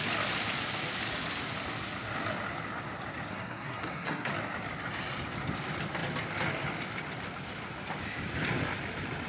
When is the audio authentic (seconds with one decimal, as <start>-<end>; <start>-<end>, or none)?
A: 0.0-3.3; 4.3-9.3